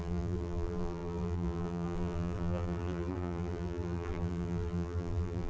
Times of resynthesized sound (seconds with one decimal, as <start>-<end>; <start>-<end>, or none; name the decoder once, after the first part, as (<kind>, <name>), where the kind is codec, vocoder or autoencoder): 0.0-5.5 (vocoder, BigVGAN v2)

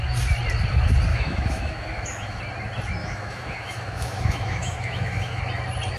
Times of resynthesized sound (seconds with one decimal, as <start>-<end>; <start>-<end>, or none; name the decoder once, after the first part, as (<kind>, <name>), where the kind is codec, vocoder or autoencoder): 1.1-2.4 (autoencoder, DAC-VAE); 3.0-5.4

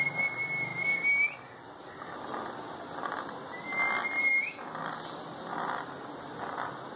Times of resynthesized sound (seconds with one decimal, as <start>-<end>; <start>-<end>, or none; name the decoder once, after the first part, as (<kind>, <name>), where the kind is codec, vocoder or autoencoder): none